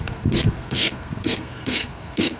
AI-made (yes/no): yes